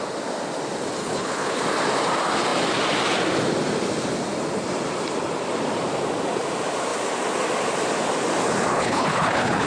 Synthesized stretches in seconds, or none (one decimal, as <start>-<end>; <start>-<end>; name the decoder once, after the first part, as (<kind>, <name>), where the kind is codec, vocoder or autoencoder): 1.0-1.6 (codec, HILCodec); 8.7-9.7